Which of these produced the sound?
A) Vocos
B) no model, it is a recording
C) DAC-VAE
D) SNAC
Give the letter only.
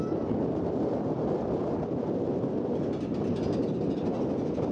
B